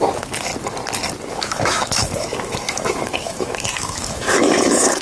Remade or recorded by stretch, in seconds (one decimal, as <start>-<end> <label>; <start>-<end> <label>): 0.0-0.5 remade; 0.5-1.3 recorded; 1.3-5.0 remade